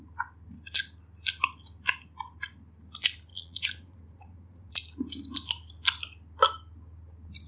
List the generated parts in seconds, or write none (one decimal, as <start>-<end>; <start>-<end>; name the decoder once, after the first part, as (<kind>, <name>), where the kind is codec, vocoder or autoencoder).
3.3-4.7 (vocoder, Vocos)